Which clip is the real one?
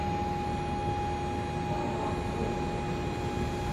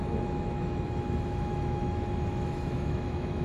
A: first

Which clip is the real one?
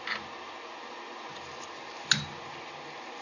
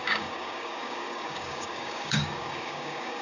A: first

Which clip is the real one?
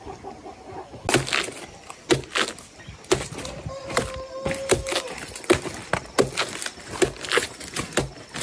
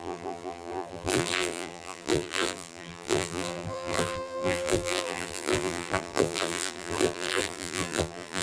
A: first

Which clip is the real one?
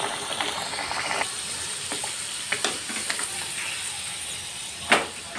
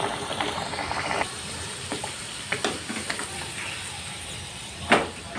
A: first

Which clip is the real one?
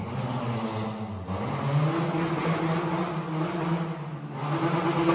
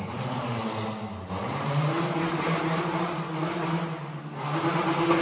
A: first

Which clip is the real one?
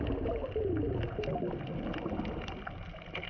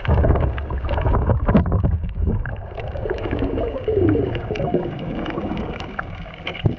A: first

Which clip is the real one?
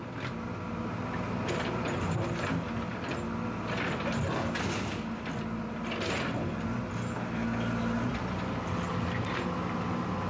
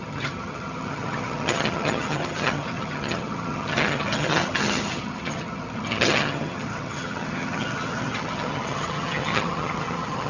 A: first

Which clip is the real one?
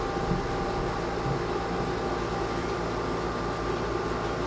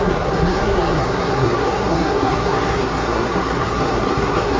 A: first